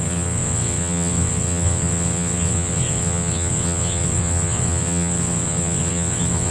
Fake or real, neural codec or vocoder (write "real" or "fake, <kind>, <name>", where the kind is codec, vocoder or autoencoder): fake, vocoder, WaveNeXt